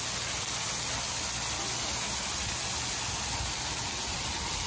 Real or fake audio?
real